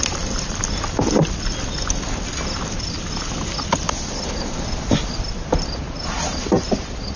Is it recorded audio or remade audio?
recorded